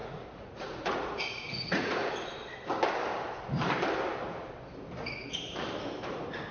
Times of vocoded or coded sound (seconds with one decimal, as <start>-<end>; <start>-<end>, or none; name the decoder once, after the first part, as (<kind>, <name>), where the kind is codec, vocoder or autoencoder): 0.0-2.1 (vocoder, Vocos)